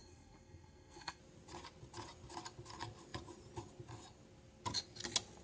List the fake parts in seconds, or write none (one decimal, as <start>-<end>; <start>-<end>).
0.0-1.2